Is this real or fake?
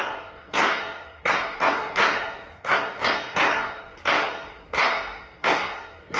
fake